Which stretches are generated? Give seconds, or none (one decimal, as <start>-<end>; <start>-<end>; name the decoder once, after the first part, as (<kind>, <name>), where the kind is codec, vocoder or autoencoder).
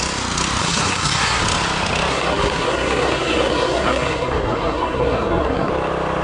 0.6-1.4 (codec, SNAC); 2.1-5.7